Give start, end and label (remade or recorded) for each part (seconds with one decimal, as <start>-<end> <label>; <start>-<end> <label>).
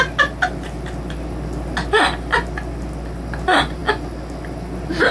0.0-5.1 recorded